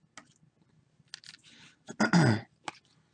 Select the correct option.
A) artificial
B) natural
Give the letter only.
B